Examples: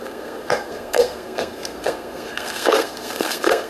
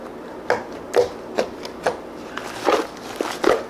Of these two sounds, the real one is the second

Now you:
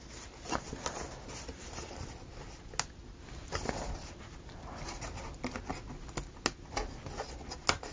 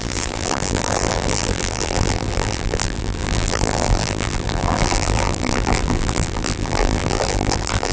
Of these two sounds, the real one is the first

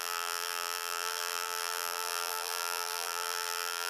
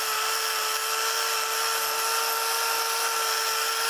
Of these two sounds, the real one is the second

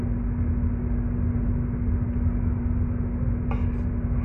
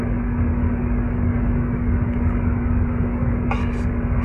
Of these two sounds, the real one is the first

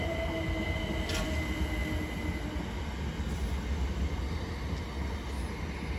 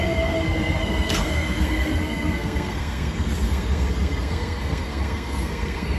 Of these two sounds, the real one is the first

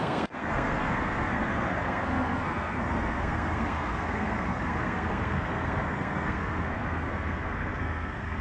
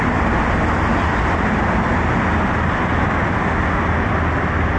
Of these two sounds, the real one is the second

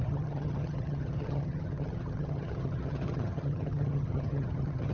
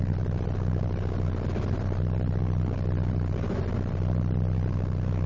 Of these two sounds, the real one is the second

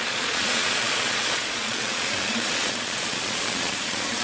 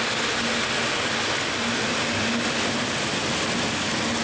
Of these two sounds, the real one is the second